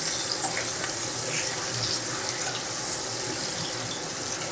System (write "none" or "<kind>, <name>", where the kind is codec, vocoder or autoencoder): none